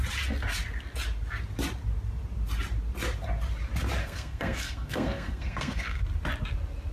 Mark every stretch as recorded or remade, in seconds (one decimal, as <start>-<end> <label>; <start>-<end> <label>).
0.0-4.0 recorded; 4.0-6.0 remade; 6.0-6.9 recorded